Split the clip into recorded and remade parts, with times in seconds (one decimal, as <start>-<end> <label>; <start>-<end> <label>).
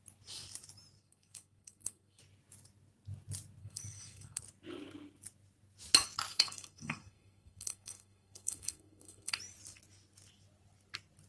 0.0-1.0 recorded; 1.0-2.2 remade; 2.2-3.6 recorded; 3.6-4.4 remade; 4.4-6.3 recorded; 6.3-9.4 remade; 9.4-11.3 recorded